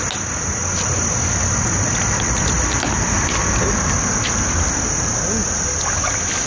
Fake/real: real